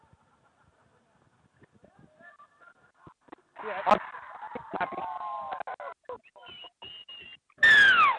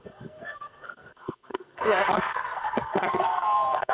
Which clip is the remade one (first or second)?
second